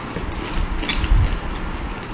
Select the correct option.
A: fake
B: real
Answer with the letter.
B